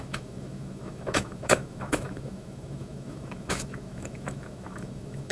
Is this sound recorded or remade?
remade